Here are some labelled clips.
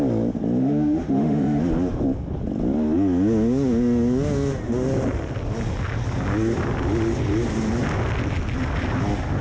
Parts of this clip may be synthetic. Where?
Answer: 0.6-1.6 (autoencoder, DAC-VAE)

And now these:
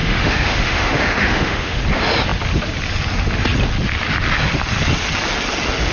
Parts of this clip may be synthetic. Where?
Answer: 0.0-1.8 (autoencoder, DAC-VAE)

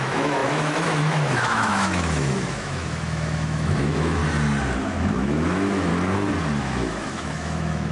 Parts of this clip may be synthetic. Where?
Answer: 0.0-4.2 (autoencoder, DAC-VAE); 4.8-5.9; 6.6-7.9

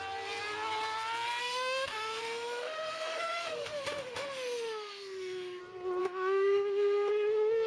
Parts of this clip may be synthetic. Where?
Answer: 1.4-5.6 (autoencoder, DAC-VAE); 6.0-7.1

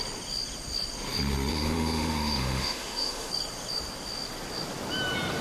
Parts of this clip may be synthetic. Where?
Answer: 1.5-3.3 (autoencoder, DAC-VAE)

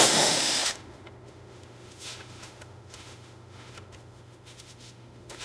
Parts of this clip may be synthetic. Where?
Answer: 0.0-5.4 (autoencoder, DAC-VAE)

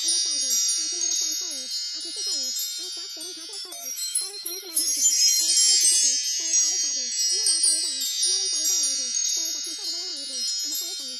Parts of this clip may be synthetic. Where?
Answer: 3.6-5.4 (autoencoder, DAC-VAE)